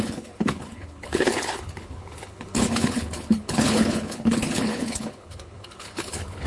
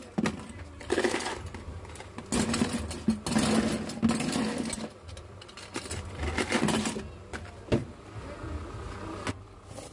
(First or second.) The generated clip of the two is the first